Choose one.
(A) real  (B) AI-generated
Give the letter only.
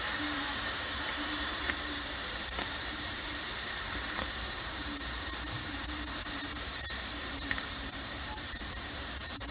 B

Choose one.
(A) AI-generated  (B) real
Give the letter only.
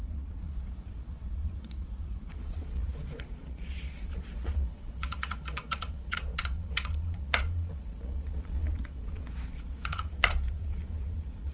A